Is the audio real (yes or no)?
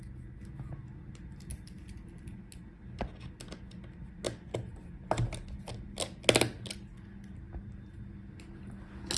yes